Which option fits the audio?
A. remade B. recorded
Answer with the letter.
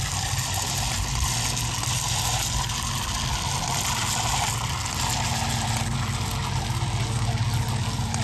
B